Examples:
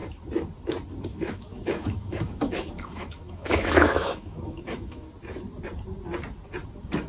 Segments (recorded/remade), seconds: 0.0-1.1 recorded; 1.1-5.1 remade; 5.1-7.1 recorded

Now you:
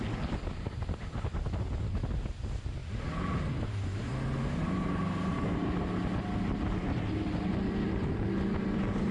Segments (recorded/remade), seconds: 0.0-9.1 recorded

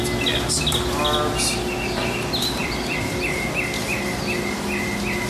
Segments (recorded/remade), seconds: 0.0-5.3 recorded

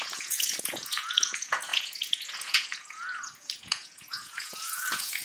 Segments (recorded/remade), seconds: 0.0-5.2 remade

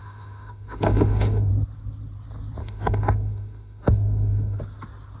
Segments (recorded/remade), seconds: 0.0-1.5 remade; 1.5-2.6 recorded; 2.6-4.6 remade; 4.6-5.2 recorded

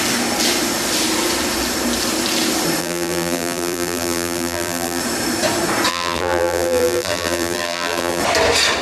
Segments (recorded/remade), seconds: 0.0-2.8 recorded; 2.8-5.0 remade; 5.0-5.9 recorded; 5.9-8.2 remade; 8.2-8.8 recorded

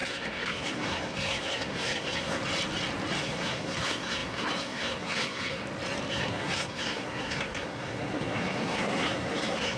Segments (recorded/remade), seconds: 0.0-2.4 remade; 2.4-3.2 recorded; 3.2-5.6 remade; 5.6-6.1 recorded; 6.1-9.8 remade

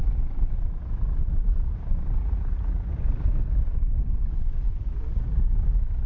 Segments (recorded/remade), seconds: 0.0-2.2 recorded; 2.2-2.9 remade; 2.9-6.1 recorded